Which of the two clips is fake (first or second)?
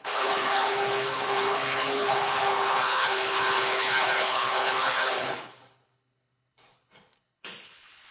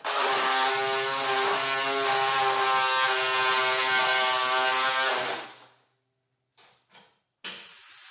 first